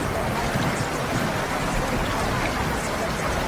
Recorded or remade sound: recorded